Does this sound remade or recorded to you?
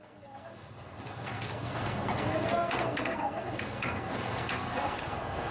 remade